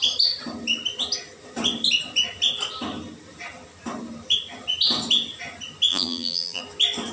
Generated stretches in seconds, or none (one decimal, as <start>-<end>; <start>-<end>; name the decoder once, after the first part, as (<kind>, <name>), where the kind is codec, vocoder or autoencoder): 5.9-6.6 (vocoder, BigVGAN v2)